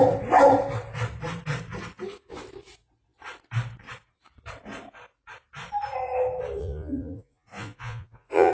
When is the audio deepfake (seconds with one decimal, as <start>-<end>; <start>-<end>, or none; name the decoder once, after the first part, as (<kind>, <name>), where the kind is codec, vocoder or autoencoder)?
6.6-8.5 (vocoder, Vocos)